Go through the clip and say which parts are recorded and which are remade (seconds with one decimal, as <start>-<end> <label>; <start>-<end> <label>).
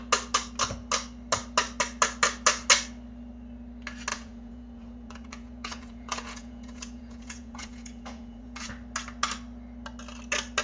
0.0-4.1 recorded; 4.1-8.7 remade; 8.7-10.6 recorded